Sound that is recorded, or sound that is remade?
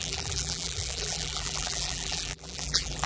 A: remade